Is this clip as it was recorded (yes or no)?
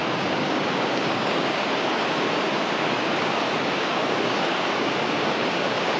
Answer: no